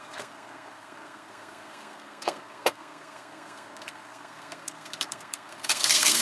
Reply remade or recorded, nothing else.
remade